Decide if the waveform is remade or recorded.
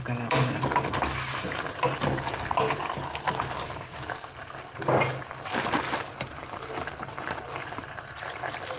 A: recorded